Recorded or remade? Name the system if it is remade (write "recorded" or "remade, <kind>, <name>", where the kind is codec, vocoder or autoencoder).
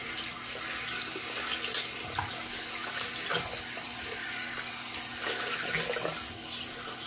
recorded